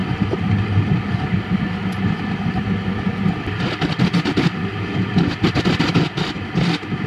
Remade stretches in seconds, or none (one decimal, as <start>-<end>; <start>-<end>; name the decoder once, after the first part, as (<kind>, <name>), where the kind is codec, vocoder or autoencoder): none